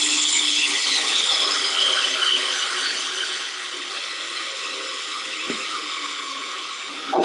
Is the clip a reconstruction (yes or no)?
yes